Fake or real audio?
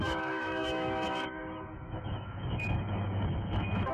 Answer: fake